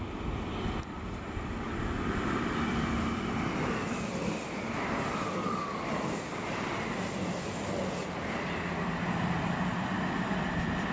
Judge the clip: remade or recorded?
recorded